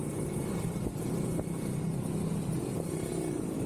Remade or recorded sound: recorded